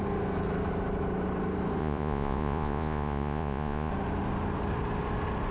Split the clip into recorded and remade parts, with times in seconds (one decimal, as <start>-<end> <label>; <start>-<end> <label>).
0.0-1.8 recorded; 1.8-3.9 remade; 3.9-5.5 recorded